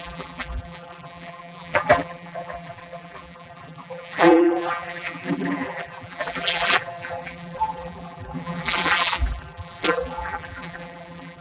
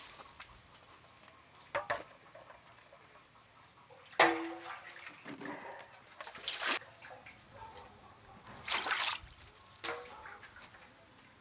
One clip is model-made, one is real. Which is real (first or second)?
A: second